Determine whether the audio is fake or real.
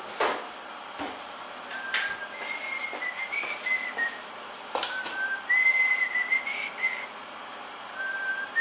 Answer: real